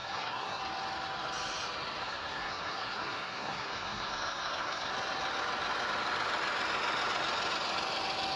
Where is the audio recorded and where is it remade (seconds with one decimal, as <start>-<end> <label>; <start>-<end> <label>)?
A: 0.0-0.6 remade; 0.6-2.0 recorded; 2.0-4.9 remade; 4.9-8.4 recorded